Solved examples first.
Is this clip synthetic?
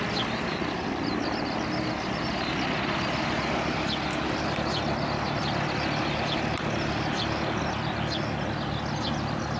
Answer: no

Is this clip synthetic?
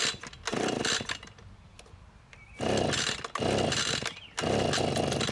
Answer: no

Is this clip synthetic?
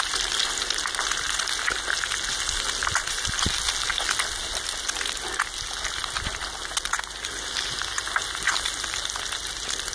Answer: no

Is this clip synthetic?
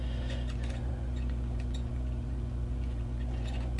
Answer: yes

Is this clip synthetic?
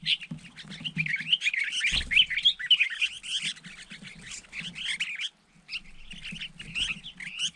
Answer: no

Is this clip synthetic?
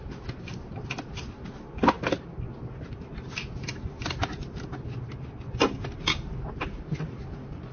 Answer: no